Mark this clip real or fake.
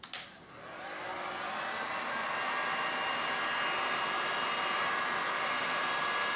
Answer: real